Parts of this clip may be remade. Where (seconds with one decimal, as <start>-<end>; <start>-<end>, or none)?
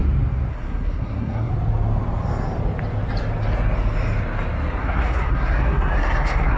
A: 0.5-1.5; 4.8-6.6